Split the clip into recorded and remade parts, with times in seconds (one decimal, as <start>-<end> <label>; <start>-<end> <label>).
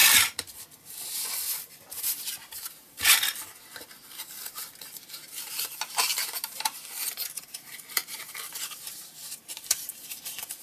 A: 0.0-2.0 recorded; 2.0-10.6 remade